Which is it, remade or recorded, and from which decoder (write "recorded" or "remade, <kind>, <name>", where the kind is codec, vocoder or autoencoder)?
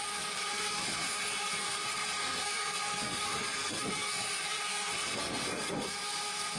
remade, codec, SNAC